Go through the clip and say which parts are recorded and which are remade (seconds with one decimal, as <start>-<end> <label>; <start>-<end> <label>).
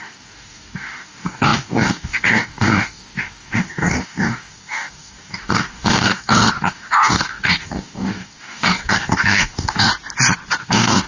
0.0-9.9 remade; 9.9-10.6 recorded; 10.6-11.1 remade